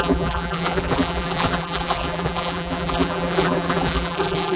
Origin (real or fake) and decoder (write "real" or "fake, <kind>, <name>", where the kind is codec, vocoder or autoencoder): fake, vocoder, BigVGAN v2